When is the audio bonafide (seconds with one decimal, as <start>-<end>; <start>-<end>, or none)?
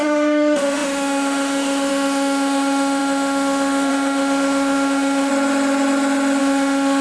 5.3-6.4